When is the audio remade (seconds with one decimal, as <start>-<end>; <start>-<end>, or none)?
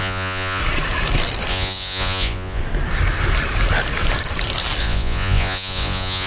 0.0-0.6; 1.5-2.6; 4.8-6.3